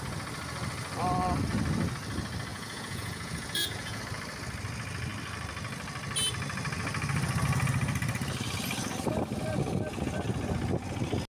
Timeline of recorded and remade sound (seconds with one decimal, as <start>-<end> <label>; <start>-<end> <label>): 0.0-2.5 recorded; 2.5-4.0 remade; 4.0-11.3 recorded

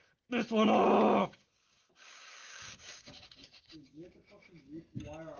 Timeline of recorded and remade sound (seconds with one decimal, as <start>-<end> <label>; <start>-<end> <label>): 0.0-1.2 recorded; 1.2-4.1 remade; 4.1-5.4 recorded

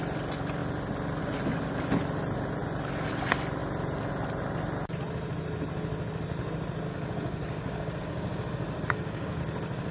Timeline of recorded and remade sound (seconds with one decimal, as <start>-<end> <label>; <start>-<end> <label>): 0.0-6.9 recorded; 6.9-9.4 remade; 9.4-9.9 recorded